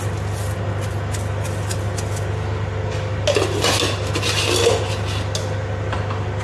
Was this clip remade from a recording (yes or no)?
no